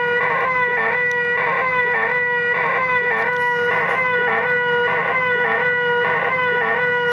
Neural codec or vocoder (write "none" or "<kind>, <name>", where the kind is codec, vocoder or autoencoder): none